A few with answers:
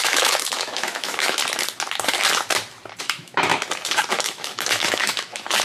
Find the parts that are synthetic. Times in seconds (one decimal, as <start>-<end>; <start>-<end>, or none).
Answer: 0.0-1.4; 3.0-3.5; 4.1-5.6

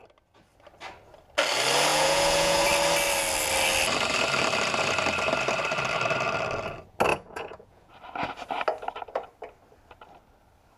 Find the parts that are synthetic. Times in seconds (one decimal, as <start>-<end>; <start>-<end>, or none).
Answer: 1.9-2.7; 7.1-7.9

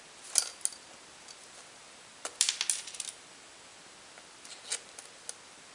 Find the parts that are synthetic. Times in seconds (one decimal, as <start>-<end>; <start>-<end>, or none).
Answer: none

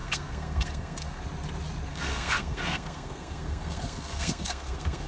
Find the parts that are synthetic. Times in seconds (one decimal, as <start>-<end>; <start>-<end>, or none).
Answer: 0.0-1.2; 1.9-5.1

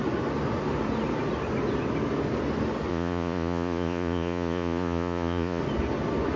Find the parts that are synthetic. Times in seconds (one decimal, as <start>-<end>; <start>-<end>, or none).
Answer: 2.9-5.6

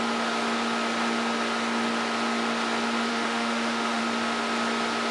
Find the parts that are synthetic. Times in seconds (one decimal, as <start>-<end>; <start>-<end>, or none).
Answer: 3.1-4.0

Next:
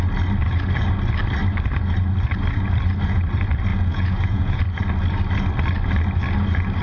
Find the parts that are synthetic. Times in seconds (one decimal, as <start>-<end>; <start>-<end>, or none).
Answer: 3.7-4.6

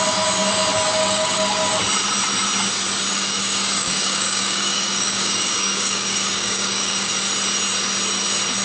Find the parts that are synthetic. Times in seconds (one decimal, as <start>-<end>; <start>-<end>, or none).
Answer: 1.0-1.7; 3.1-7.1